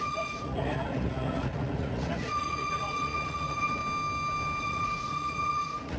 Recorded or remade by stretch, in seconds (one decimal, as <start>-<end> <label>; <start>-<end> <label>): 0.0-3.8 remade; 3.8-4.6 recorded; 4.6-6.0 remade